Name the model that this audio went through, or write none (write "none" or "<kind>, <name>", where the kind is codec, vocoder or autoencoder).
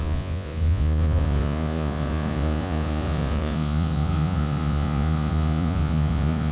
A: vocoder, Vocos